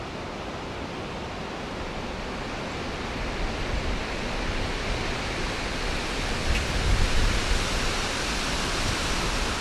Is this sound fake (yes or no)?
no